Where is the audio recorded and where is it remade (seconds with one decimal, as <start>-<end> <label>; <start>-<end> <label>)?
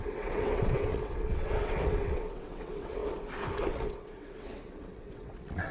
0.0-3.0 remade; 3.0-3.7 recorded; 3.7-5.7 remade